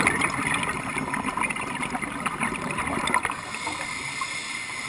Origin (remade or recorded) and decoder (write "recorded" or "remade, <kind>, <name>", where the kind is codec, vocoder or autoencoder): recorded